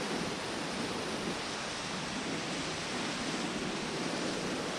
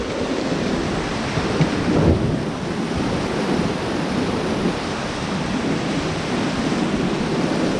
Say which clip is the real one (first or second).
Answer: first